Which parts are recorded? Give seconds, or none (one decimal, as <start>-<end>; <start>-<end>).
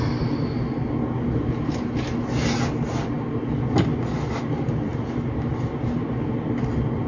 0.0-7.1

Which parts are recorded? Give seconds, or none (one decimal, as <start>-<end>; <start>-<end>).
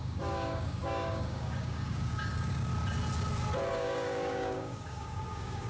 2.7-3.7